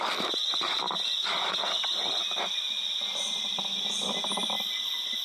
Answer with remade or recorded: recorded